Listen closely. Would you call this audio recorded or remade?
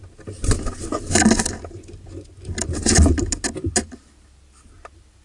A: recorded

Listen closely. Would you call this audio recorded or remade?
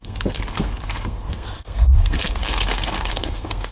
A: remade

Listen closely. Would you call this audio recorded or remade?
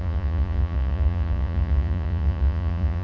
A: remade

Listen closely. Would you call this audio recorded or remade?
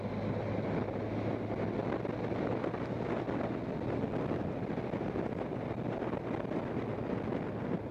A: recorded